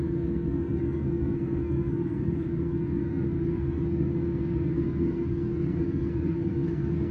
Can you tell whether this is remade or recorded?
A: remade